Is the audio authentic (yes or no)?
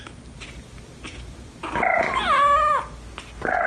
yes